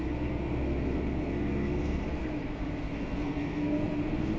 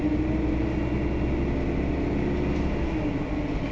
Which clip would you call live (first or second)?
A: second